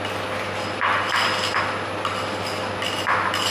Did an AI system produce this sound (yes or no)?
no